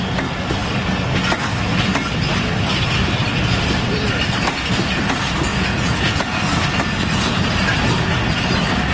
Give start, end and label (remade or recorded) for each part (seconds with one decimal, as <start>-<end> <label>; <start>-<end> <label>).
0.0-5.5 recorded; 5.5-6.4 remade; 6.4-8.9 recorded